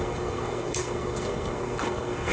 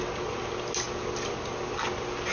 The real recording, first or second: second